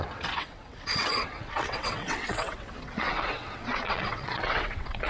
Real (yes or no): no